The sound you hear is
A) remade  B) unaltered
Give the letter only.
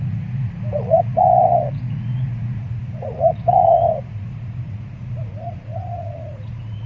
A